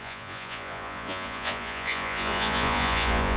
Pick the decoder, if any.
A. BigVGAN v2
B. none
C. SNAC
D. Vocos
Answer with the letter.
D